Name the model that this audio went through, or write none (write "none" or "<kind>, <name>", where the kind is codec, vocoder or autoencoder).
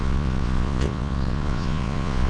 vocoder, Vocos